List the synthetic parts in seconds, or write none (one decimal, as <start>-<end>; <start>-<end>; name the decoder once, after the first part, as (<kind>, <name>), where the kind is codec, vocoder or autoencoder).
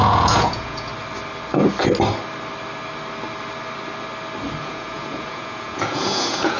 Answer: 0.0-0.9 (vocoder, Vocos); 4.6-6.6